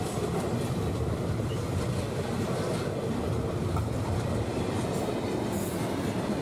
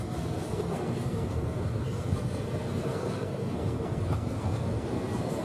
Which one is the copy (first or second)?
second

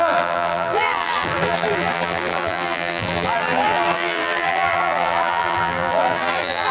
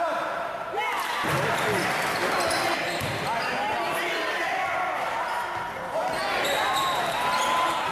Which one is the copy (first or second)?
first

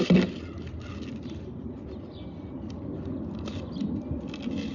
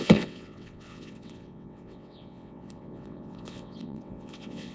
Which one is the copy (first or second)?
second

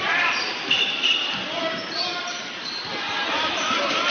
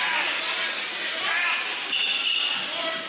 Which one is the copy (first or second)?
first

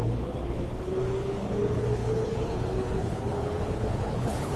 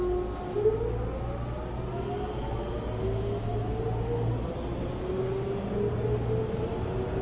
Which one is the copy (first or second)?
first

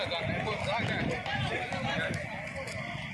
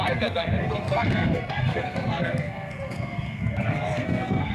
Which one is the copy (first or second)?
second